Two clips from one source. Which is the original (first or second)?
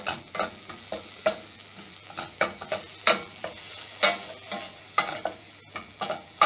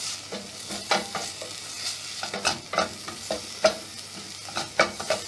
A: second